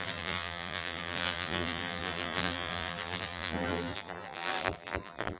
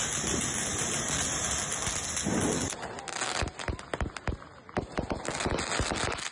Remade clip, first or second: first